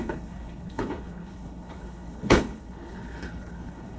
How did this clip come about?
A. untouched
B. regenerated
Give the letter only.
B